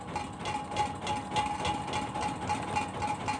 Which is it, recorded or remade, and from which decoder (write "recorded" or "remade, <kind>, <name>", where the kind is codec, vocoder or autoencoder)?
recorded